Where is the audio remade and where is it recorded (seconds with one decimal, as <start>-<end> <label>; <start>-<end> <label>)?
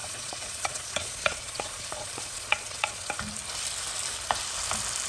0.0-3.1 remade; 3.1-5.1 recorded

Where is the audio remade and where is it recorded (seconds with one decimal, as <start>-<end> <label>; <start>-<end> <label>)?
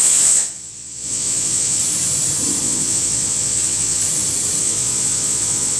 0.0-1.8 remade; 1.8-2.6 recorded; 2.6-4.0 remade; 4.0-4.6 recorded; 4.6-5.8 remade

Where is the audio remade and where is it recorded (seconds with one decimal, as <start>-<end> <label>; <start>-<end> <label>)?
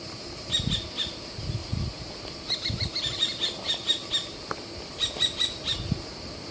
0.0-1.6 recorded; 1.6-2.1 remade; 2.1-6.5 recorded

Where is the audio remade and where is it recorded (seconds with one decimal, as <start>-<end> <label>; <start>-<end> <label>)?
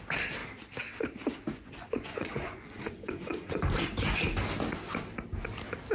0.0-1.5 recorded; 1.5-3.6 remade; 3.6-5.9 recorded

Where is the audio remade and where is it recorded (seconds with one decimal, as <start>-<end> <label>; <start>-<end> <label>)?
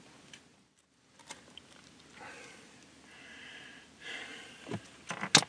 0.0-5.5 recorded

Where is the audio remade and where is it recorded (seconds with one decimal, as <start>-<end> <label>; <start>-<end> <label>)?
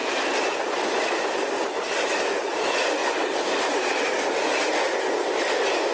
0.0-5.9 recorded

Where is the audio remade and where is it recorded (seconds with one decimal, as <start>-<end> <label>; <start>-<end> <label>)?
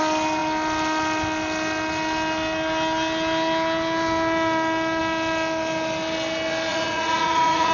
0.0-6.7 recorded; 6.7-7.7 remade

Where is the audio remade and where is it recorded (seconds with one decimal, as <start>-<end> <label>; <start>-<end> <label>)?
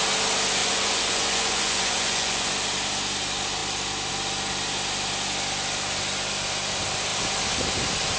0.0-0.6 recorded; 0.6-2.5 remade; 2.5-8.2 recorded